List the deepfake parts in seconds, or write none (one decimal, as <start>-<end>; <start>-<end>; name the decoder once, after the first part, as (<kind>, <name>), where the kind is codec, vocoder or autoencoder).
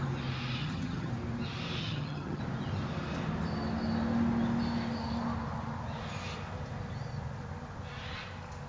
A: 0.6-1.1 (vocoder, HiFi-GAN); 1.8-2.4